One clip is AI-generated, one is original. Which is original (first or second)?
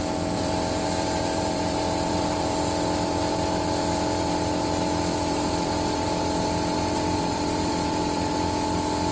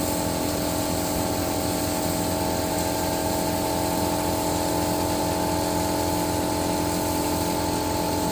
second